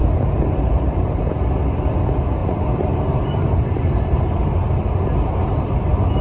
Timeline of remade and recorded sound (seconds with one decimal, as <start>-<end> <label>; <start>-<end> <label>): 0.0-1.4 remade; 1.4-2.4 recorded; 2.4-4.7 remade; 4.7-6.2 recorded